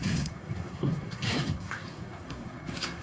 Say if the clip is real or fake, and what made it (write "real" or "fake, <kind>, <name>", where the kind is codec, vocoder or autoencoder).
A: fake, codec, SNAC